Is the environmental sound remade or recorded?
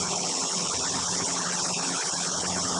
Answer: remade